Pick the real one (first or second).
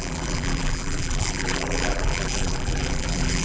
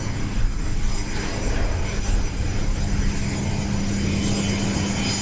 second